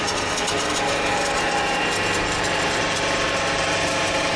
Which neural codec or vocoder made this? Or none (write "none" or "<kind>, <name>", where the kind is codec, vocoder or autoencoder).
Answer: vocoder, BigVGAN v2